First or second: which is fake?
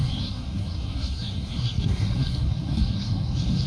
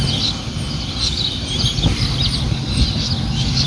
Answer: first